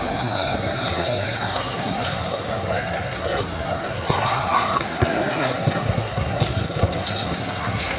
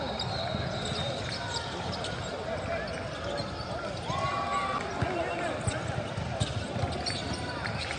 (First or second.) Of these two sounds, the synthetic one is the first